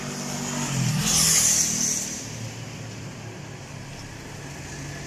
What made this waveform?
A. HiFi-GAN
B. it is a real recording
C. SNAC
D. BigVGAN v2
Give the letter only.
B